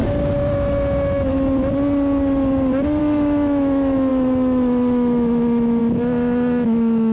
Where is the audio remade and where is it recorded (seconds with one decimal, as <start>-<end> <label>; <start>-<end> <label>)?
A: 0.0-3.0 recorded; 3.0-7.1 remade